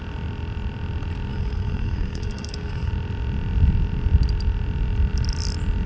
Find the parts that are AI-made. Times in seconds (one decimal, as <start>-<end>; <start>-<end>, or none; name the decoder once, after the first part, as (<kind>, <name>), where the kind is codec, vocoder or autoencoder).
1.3-2.9 (codec, SNAC)